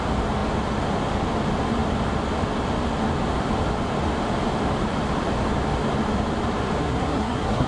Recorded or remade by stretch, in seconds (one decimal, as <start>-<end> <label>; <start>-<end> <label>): 0.0-6.8 recorded; 6.8-7.7 remade